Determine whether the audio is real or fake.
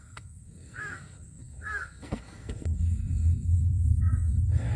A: fake